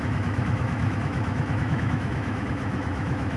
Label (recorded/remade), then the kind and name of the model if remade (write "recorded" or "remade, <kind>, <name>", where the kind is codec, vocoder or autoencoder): remade, autoencoder, DAC-VAE